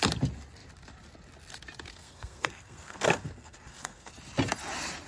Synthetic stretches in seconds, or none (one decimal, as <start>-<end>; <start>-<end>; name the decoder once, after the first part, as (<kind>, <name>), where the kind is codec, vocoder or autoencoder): 1.9-4.1 (codec, SNAC)